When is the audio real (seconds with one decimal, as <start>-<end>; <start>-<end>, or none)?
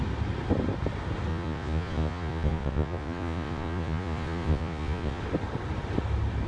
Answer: 0.0-1.3; 5.2-6.5